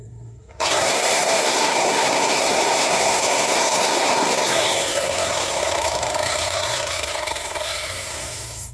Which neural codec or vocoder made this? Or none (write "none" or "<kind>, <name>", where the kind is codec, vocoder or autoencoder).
codec, SNAC